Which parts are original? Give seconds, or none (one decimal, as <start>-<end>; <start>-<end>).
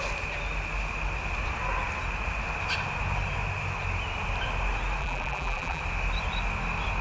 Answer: 0.0-5.0; 5.8-7.0